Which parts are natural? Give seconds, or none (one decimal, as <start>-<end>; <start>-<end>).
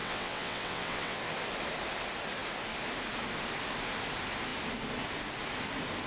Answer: 1.2-6.1